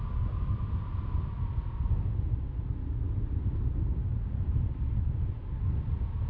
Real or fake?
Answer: real